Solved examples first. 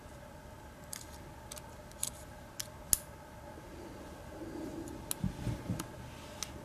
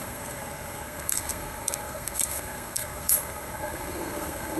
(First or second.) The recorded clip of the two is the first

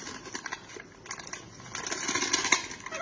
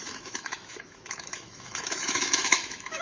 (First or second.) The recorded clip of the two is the first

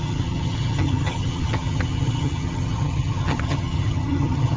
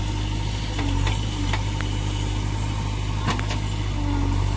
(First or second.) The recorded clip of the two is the second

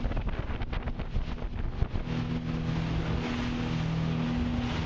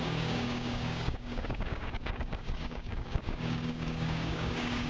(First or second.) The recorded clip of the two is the first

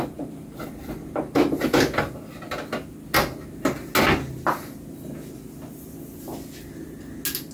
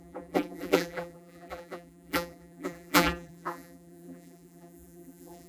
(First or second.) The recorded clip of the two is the first